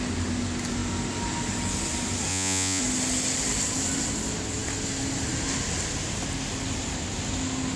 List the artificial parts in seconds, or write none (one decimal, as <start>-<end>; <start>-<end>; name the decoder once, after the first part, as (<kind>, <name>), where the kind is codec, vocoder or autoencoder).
2.3-2.8 (vocoder, Vocos)